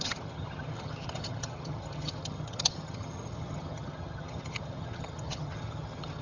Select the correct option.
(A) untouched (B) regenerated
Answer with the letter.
B